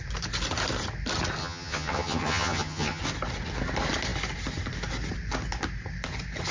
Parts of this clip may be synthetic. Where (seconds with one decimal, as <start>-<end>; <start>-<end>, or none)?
1.4-3.0